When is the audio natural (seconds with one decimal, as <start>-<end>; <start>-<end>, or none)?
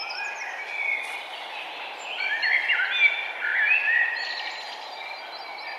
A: 0.0-5.8